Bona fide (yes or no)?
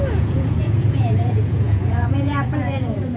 no